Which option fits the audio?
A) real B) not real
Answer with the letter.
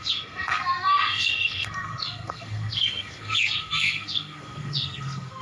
B